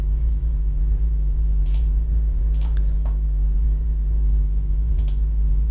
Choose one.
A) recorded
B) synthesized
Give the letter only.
B